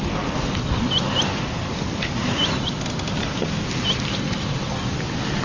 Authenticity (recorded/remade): recorded